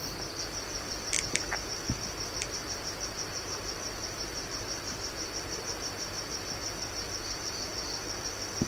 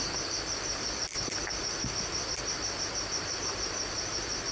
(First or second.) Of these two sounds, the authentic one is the first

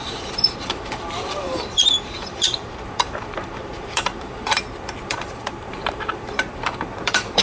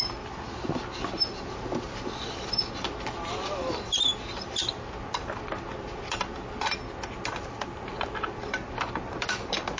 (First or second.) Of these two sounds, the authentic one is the second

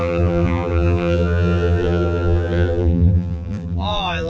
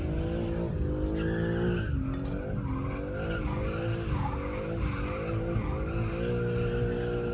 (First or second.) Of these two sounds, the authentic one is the second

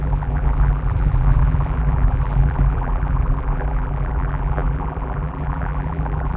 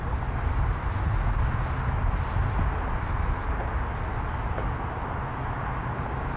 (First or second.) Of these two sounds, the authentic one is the second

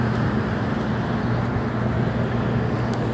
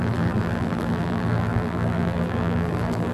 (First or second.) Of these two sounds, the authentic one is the first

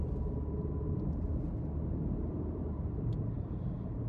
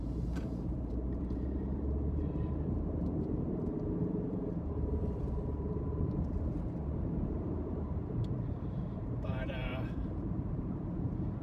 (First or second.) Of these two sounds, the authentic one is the first